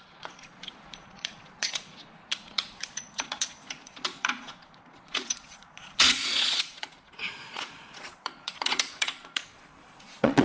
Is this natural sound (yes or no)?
no